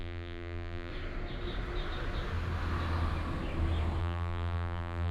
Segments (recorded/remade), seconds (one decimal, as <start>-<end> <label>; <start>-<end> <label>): 0.0-0.9 remade; 0.9-4.0 recorded; 4.0-5.1 remade

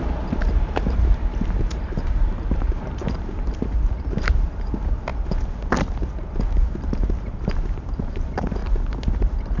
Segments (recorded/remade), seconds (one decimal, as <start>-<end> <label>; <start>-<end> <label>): 0.0-5.1 remade; 5.1-7.6 recorded; 7.6-8.6 remade; 8.6-9.1 recorded; 9.1-9.6 remade

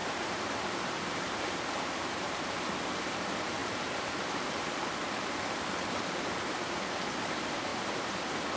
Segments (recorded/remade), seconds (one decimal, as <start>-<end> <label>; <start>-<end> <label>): 0.0-2.5 remade; 2.5-3.6 recorded; 3.6-6.3 remade; 6.3-7.7 recorded; 7.7-8.2 remade; 8.2-8.6 recorded

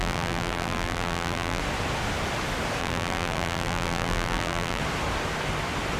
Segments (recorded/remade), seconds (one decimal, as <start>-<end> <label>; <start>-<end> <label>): 0.0-1.6 remade; 1.6-2.8 recorded; 2.8-4.8 remade; 4.8-6.0 recorded

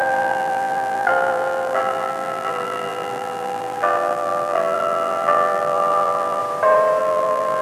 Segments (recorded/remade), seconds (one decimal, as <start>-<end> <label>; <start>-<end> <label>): 0.0-6.4 remade; 6.4-7.0 recorded; 7.0-7.6 remade